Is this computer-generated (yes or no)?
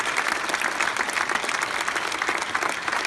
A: no